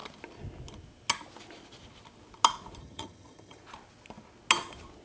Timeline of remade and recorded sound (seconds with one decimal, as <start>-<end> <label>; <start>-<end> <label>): 0.0-2.8 recorded; 2.8-3.6 remade; 3.6-5.0 recorded